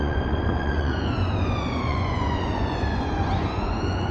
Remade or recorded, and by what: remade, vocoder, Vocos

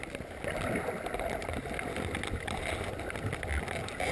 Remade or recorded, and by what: recorded